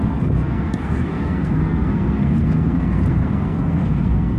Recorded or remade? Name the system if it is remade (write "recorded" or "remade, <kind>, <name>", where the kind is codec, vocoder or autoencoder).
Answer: remade, codec, SNAC